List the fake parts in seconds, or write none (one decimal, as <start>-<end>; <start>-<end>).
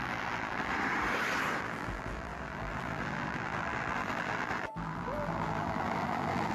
0.0-0.7; 1.6-6.5